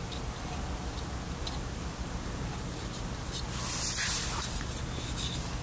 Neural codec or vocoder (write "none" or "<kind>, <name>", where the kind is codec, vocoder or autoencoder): none